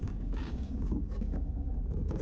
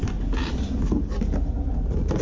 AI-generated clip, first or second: first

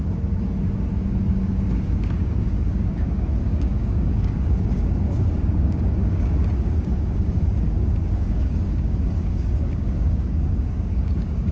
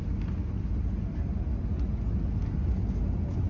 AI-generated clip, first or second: first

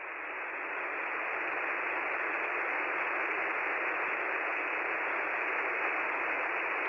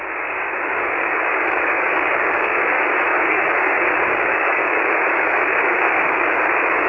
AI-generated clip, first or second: second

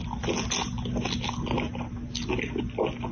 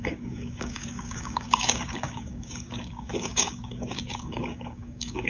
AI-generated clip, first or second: second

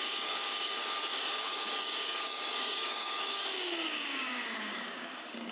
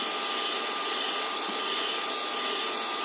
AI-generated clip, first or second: first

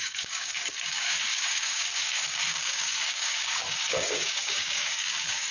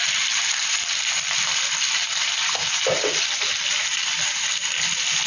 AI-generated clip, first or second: first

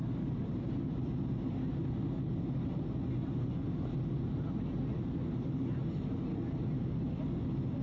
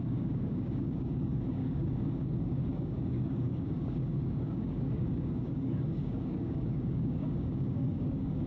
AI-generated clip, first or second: second